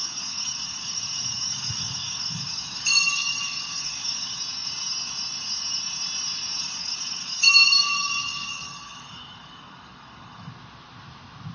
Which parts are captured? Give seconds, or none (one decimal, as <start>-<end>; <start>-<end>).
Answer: 4.4-6.6; 10.5-11.5